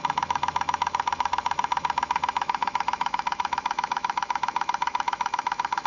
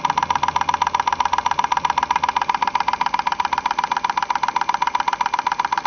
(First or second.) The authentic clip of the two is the second